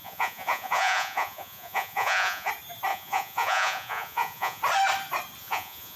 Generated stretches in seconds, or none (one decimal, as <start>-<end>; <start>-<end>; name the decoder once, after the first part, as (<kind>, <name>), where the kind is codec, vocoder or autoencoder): 0.0-2.5 (vocoder, Vocos); 2.9-4.6; 5.4-6.0